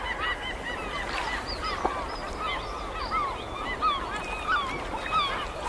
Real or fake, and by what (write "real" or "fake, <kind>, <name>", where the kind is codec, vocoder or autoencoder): real